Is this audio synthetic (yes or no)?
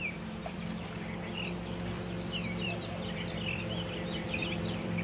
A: yes